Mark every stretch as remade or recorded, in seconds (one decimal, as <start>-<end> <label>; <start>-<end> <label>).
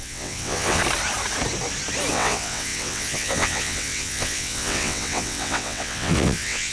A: 0.0-0.8 remade; 0.8-2.1 recorded; 2.1-6.7 remade